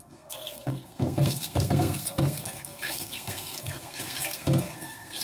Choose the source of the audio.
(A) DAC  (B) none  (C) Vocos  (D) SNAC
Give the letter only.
D